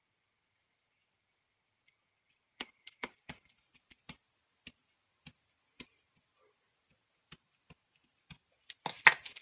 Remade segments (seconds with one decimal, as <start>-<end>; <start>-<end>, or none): 0.0-3.5